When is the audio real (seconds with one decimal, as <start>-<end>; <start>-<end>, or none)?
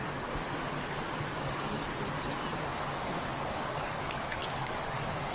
0.0-1.3; 1.8-3.2